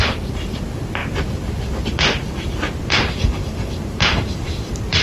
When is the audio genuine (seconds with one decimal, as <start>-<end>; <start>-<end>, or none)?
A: 1.0-2.3